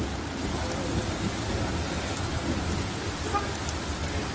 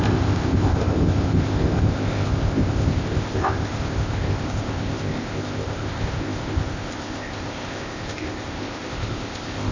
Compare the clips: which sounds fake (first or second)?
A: second